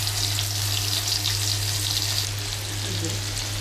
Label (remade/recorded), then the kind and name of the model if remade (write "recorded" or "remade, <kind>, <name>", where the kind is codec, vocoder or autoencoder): recorded